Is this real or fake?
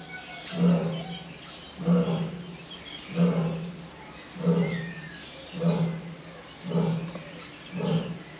real